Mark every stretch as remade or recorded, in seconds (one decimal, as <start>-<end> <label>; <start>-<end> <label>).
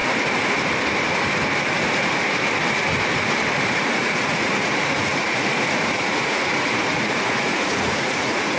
0.0-3.6 recorded; 3.6-8.6 remade